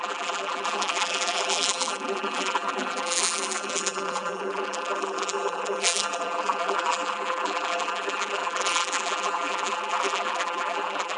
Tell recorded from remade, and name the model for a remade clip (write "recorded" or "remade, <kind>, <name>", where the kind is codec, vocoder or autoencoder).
remade, vocoder, BigVGAN v2